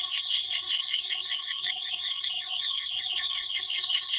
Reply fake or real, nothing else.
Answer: fake